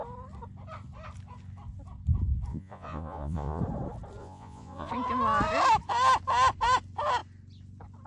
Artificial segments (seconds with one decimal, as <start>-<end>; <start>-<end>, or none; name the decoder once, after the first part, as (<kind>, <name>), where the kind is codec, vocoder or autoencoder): 2.5-3.6 (vocoder, Vocos); 4.2-4.9